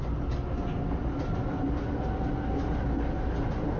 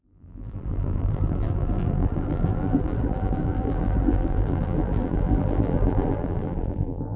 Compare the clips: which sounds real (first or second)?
first